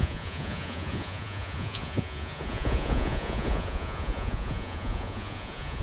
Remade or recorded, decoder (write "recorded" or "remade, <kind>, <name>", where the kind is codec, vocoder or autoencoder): remade, vocoder, Vocos